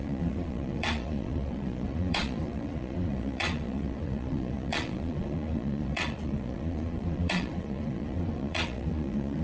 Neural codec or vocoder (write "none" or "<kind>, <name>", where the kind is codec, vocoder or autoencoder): vocoder, Vocos